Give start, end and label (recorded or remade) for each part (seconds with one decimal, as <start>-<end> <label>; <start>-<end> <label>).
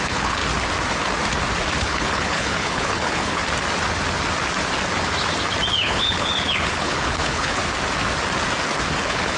0.0-0.4 remade; 0.4-1.8 recorded; 1.8-3.4 remade; 3.4-5.7 recorded; 5.7-7.6 remade; 7.6-9.0 recorded; 9.0-9.4 remade